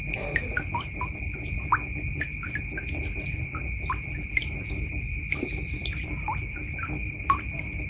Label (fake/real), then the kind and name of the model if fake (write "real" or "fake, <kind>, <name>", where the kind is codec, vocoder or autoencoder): real